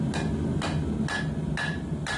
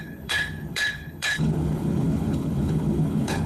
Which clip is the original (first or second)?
first